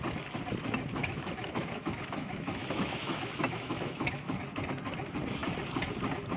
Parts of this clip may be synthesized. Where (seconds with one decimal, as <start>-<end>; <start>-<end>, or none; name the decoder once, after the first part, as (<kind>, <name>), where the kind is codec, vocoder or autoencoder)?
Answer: 1.0-4.4 (autoencoder, DAC-VAE)